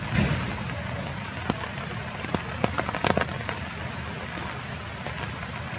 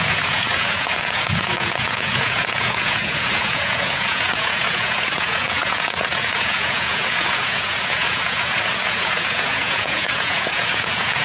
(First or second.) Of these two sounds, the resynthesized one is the second